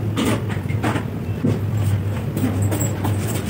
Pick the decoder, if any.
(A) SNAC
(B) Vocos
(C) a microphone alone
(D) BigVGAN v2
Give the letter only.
C